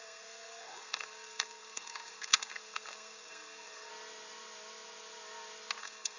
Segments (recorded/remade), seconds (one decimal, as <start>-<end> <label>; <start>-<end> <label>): 0.0-3.9 remade; 3.9-5.8 recorded; 5.8-6.2 remade